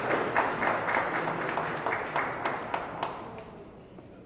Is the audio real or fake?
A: real